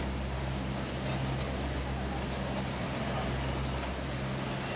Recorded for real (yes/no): yes